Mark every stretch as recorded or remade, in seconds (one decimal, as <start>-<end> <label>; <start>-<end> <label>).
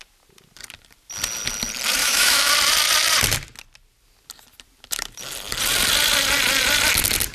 0.0-2.0 recorded; 2.0-2.5 remade; 2.5-7.3 recorded